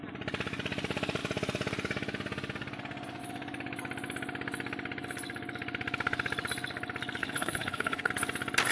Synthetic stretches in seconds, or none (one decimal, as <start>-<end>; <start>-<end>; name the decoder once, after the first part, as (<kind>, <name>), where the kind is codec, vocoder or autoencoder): 7.2-8.1 (codec, HILCodec)